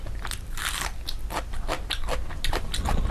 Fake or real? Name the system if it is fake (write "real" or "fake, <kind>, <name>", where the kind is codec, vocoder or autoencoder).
real